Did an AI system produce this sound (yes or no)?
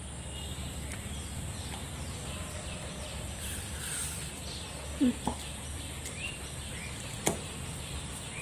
no